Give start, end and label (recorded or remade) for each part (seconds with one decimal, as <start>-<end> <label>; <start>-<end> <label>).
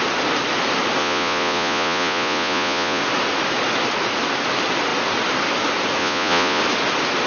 0.0-1.0 recorded; 1.0-3.0 remade; 3.0-6.0 recorded; 6.0-6.6 remade; 6.6-7.3 recorded